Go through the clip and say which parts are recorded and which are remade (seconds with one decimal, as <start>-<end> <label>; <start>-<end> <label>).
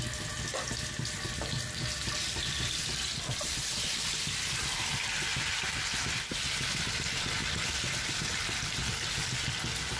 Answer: 0.0-10.0 recorded